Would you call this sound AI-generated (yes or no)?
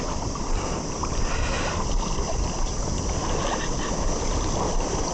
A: no